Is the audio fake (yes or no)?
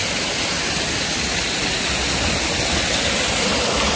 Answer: no